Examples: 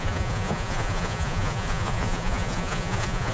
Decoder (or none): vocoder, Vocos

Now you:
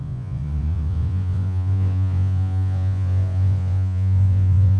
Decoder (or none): vocoder, Vocos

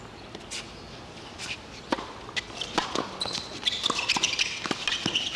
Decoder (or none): none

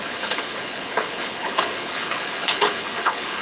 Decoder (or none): codec, HILCodec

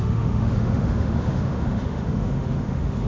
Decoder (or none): autoencoder, DAC-VAE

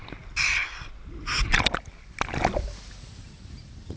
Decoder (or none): none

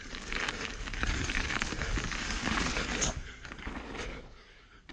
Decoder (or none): codec, DAC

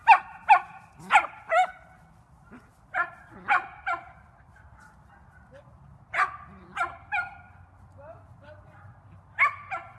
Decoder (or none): none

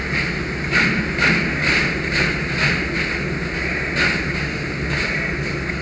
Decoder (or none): none